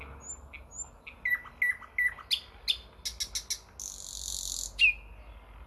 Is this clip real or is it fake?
real